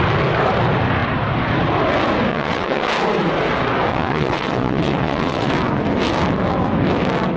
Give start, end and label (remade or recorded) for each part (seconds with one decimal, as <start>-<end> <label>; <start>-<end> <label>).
0.0-2.3 recorded; 2.3-2.9 remade; 2.9-3.9 recorded; 3.9-5.5 remade; 5.5-7.4 recorded

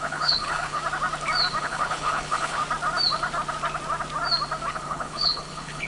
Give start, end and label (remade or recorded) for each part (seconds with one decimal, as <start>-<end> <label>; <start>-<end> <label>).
0.0-0.8 remade; 0.8-1.6 recorded; 1.6-2.6 remade; 2.6-4.7 recorded; 4.7-5.9 remade

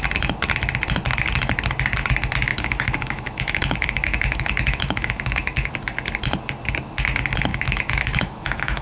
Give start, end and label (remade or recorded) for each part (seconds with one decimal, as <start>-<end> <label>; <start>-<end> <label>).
0.0-2.5 recorded; 2.5-5.7 remade; 5.7-7.5 recorded; 7.5-8.8 remade

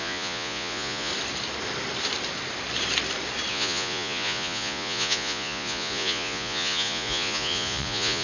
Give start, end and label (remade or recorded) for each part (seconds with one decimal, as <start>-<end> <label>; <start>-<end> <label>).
0.0-1.1 remade; 1.1-3.5 recorded; 3.5-8.2 remade

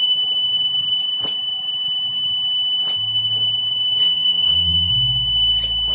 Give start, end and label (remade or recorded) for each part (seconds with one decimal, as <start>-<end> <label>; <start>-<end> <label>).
0.0-4.0 recorded; 4.0-4.9 remade; 4.9-5.9 recorded

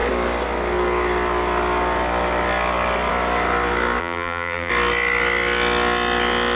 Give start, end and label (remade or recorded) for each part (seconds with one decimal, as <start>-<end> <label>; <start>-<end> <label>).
0.0-4.0 recorded; 4.0-4.7 remade; 4.7-6.6 recorded